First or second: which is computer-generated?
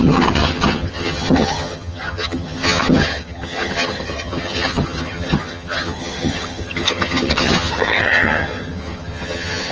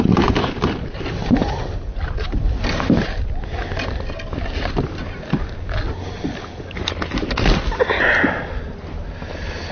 first